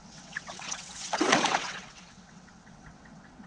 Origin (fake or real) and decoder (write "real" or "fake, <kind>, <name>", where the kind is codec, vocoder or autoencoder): fake, vocoder, WaveNeXt